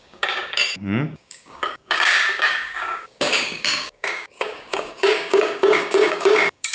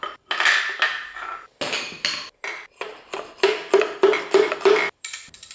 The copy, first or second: first